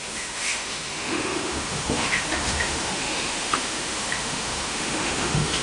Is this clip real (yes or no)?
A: no